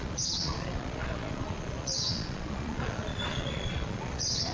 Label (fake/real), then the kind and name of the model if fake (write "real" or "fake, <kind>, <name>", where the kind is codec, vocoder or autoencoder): fake, vocoder, Vocos